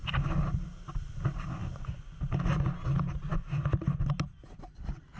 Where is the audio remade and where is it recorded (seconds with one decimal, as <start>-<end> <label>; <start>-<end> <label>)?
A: 0.0-5.2 recorded